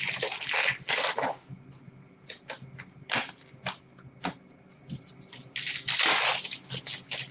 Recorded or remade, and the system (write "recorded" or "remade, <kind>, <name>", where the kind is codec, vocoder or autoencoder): recorded